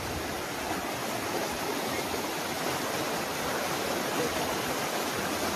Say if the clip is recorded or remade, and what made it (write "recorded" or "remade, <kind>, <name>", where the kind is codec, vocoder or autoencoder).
recorded